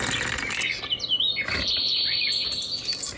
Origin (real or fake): real